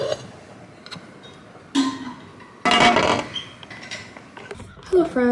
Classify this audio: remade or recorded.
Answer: recorded